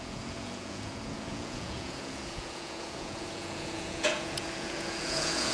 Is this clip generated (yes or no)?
yes